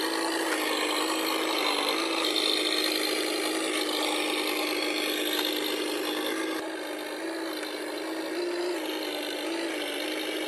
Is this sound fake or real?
real